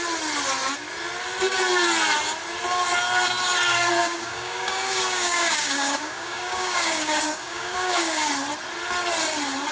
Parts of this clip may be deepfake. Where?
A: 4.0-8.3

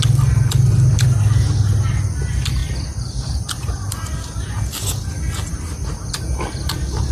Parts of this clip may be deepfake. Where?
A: 2.6-3.7

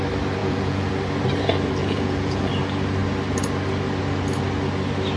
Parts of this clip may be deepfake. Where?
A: 0.4-0.9; 1.8-2.5